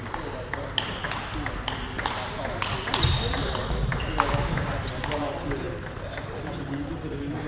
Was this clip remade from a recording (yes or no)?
no